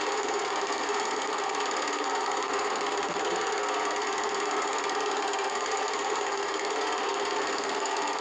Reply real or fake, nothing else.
fake